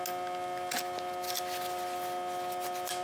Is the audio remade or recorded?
recorded